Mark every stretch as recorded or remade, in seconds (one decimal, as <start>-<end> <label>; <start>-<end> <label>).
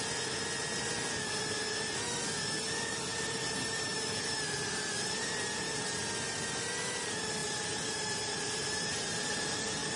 0.0-3.1 recorded; 3.1-6.1 remade; 6.1-7.4 recorded; 7.4-10.0 remade